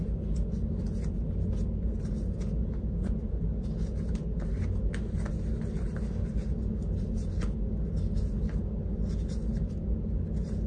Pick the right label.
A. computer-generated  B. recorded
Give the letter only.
B